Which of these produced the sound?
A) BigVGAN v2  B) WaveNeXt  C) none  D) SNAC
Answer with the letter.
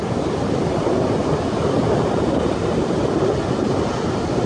C